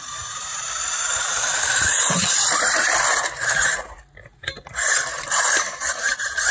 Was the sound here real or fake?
fake